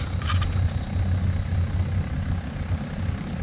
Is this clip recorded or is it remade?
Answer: recorded